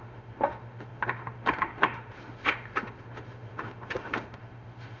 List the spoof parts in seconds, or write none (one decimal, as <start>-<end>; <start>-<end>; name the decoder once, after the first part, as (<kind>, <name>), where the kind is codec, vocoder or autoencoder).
0.0-5.0 (autoencoder, DAC-VAE)